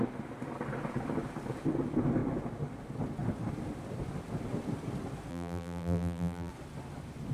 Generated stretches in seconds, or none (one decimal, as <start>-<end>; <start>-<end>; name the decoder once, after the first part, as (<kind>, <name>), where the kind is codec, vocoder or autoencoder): 5.3-6.5 (vocoder, BigVGAN v2)